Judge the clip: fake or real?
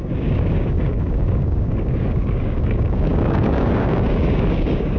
fake